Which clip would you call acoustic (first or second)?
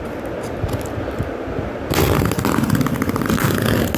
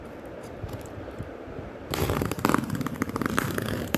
first